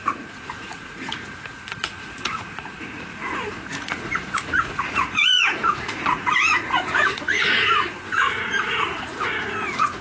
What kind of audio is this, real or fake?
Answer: fake